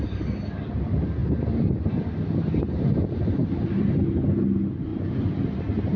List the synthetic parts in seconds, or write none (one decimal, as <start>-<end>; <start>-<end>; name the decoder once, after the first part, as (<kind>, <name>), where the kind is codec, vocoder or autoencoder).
3.4-4.0 (vocoder, BigVGAN v2); 4.9-5.6